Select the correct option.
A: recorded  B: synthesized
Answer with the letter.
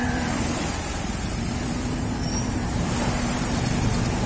B